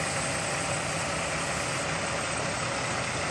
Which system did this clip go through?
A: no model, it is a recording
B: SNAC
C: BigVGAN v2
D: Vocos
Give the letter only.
A